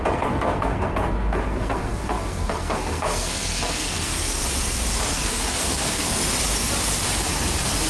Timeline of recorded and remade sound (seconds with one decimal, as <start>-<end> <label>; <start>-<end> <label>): 0.0-4.4 remade; 4.4-5.1 recorded; 5.1-6.2 remade; 6.2-7.9 recorded